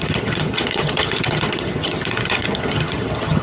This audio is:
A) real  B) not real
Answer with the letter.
B